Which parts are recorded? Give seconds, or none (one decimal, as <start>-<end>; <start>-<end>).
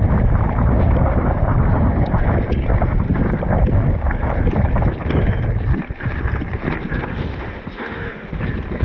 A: 0.0-7.1; 8.4-8.8